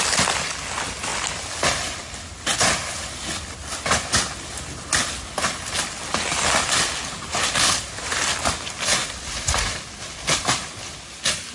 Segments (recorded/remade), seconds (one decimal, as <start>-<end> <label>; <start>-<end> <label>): 0.0-11.5 recorded